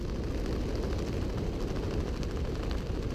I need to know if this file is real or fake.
real